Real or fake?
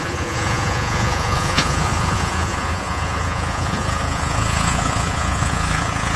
fake